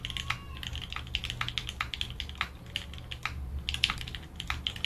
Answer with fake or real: real